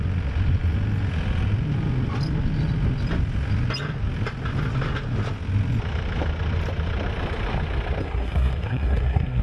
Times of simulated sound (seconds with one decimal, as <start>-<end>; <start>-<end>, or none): 8.0-9.4